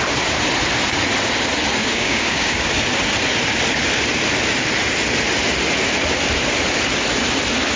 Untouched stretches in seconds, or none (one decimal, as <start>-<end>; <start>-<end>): 0.0-1.8; 2.7-7.8